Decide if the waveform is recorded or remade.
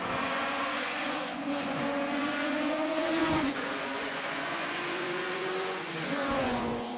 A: remade